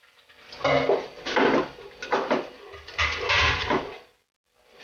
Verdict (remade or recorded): recorded